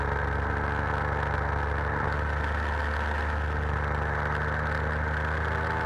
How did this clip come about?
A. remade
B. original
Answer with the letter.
B